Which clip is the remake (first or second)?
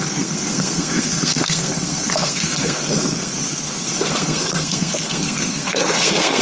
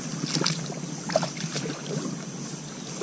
first